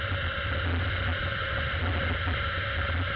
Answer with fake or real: real